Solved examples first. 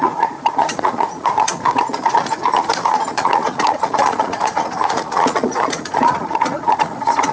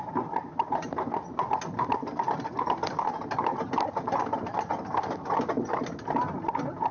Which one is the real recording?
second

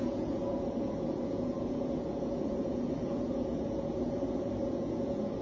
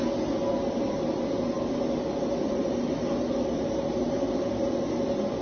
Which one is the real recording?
second